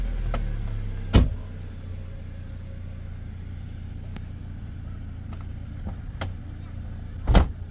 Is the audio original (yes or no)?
yes